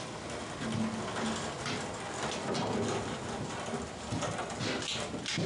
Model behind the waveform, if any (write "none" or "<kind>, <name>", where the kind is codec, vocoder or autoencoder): none